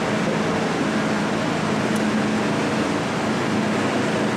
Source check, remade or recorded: recorded